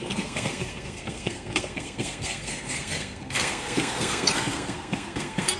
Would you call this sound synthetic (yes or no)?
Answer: yes